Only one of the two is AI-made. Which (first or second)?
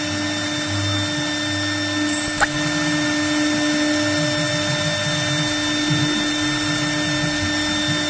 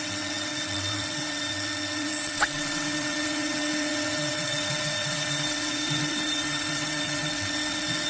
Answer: second